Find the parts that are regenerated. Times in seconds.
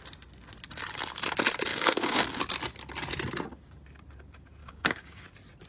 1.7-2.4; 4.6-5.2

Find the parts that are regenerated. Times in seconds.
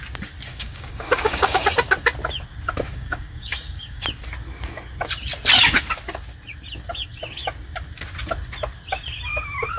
0.5-1.7; 2.9-4.0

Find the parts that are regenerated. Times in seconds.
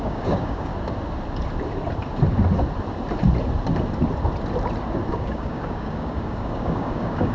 0.0-0.7; 5.1-7.3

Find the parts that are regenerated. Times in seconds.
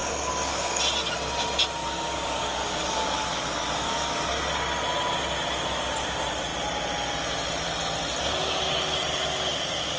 0.0-0.8; 1.8-4.3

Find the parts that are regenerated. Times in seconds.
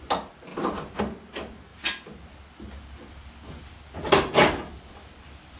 none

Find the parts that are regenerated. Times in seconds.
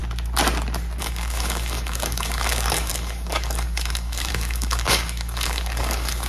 1.0-6.3